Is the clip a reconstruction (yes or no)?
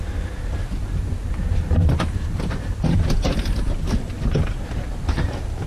no